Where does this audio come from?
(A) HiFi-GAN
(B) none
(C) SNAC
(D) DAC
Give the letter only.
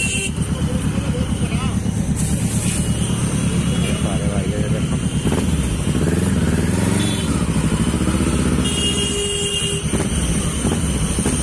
B